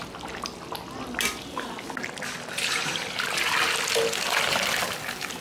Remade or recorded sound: recorded